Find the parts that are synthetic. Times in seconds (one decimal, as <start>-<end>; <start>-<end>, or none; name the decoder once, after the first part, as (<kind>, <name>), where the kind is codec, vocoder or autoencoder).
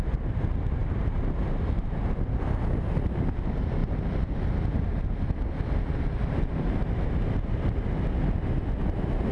none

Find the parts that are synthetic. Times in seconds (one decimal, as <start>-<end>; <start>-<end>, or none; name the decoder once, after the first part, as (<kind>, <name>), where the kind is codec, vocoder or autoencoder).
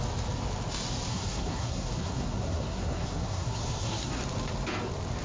1.1-4.2 (codec, SNAC)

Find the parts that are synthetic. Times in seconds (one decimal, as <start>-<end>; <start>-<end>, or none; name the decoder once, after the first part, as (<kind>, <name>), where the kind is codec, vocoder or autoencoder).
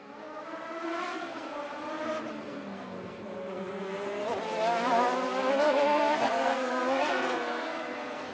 0.0-1.6 (codec, SNAC); 2.3-4.2; 5.5-8.3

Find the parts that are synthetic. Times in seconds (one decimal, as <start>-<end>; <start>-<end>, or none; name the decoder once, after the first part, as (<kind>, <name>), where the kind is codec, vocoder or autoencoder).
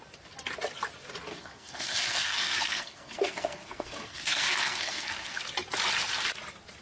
1.3-5.4 (codec, SNAC)